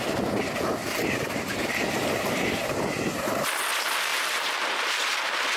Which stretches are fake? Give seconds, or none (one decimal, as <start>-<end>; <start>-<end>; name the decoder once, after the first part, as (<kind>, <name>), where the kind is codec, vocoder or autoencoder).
0.8-3.3 (vocoder, BigVGAN v2); 4.1-4.9

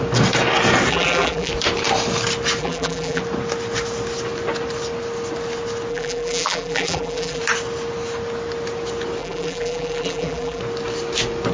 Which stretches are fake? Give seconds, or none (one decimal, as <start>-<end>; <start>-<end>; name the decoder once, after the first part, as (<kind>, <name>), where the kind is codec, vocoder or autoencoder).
0.9-1.5 (vocoder, BigVGAN v2); 2.6-3.2; 5.9-7.4; 9.2-10.6

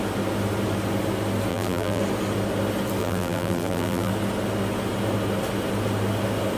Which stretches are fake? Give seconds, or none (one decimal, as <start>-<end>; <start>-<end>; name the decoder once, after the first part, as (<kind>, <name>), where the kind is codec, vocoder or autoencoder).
1.5-2.0 (vocoder, BigVGAN v2); 3.0-4.1

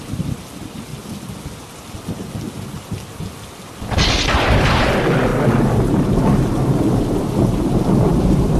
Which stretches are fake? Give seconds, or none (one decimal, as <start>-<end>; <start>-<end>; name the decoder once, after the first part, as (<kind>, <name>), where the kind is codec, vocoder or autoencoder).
0.0-0.9 (vocoder, BigVGAN v2); 4.8-5.3; 6.0-8.6

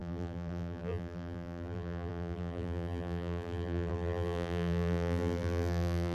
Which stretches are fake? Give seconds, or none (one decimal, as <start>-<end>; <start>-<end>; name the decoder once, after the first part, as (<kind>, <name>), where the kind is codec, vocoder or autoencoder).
0.0-6.1 (vocoder, BigVGAN v2)